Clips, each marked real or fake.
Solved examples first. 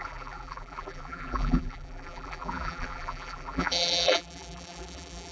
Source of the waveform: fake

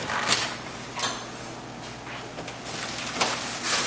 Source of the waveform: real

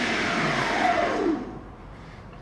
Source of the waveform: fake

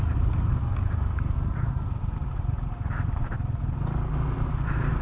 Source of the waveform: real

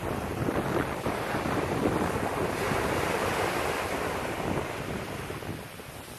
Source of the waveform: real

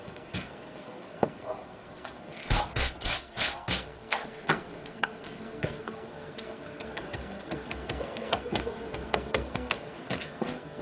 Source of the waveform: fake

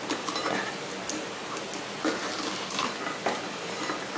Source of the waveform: real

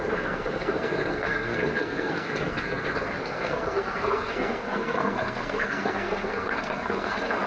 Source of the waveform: fake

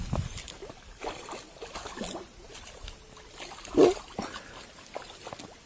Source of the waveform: real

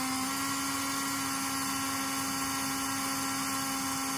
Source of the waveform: real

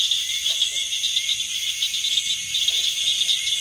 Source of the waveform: real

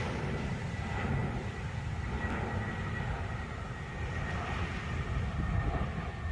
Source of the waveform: real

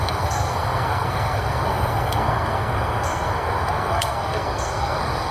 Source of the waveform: fake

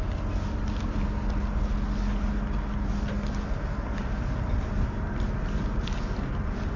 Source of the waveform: real